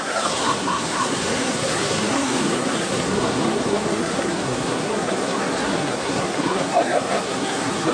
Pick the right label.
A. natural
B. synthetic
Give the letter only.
B